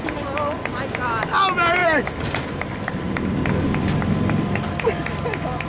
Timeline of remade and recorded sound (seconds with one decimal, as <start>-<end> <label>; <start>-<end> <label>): 0.0-1.8 recorded; 1.8-4.7 remade; 4.7-5.7 recorded